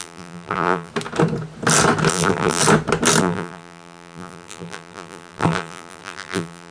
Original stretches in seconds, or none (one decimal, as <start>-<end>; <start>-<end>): 0.9-2.1; 2.6-3.2